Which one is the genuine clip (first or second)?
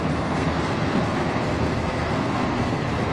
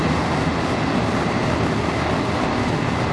second